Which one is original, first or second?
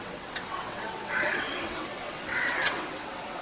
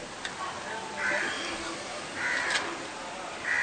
second